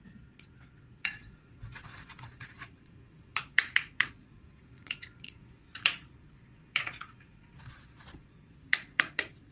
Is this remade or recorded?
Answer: remade